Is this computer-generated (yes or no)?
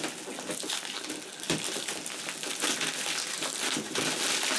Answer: no